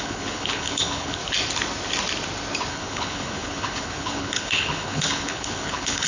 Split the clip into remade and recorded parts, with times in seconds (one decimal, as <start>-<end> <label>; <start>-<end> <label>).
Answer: 0.0-1.2 remade; 1.2-2.7 recorded; 2.7-6.1 remade